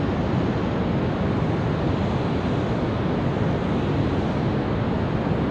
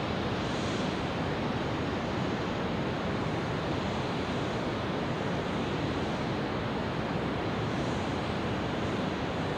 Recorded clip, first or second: first